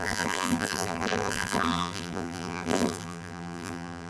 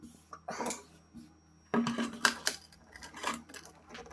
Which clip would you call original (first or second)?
second